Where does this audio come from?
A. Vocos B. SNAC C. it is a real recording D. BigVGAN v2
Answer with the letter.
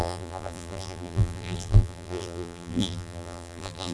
D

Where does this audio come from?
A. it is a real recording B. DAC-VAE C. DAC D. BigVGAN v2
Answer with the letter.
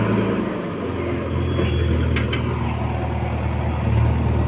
A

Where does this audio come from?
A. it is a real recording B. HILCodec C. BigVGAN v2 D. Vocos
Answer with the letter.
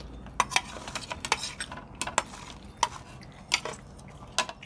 A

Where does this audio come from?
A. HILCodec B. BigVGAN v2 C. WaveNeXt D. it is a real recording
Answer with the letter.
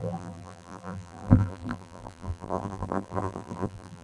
B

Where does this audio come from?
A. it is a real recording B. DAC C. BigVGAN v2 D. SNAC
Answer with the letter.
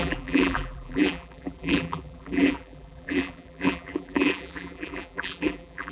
C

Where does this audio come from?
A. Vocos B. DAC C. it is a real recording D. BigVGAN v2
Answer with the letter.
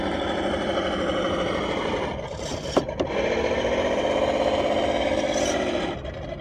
C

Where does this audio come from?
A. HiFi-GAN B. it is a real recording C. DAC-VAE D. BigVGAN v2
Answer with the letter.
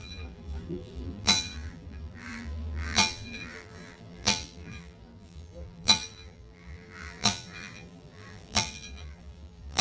D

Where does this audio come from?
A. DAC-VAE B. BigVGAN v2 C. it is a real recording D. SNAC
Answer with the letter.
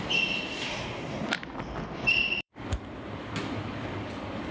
B